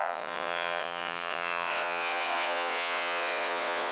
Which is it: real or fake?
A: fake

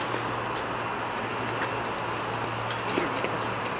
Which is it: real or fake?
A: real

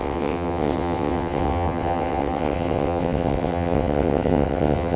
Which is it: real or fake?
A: fake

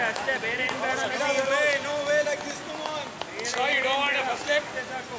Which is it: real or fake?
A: real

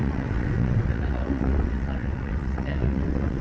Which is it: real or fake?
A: fake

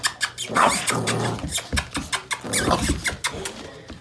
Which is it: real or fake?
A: real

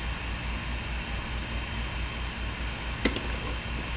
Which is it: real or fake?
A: real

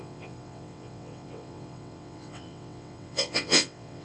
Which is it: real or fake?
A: fake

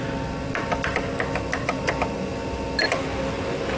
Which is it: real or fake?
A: real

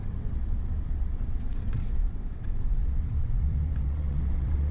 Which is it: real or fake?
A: fake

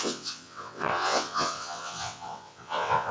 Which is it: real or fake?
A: fake